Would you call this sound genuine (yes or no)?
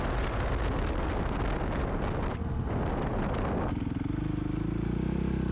yes